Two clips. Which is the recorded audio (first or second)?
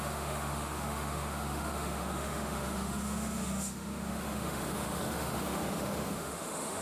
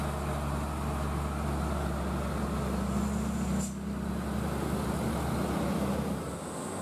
second